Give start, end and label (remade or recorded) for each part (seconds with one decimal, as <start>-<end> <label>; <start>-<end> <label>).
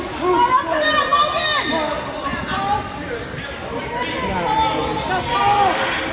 0.0-6.1 recorded